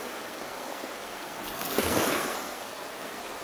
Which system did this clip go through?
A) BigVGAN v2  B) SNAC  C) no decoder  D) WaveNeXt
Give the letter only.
B